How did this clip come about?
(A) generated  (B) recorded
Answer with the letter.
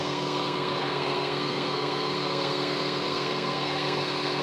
A